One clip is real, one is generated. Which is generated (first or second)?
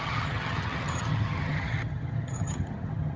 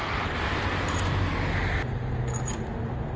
first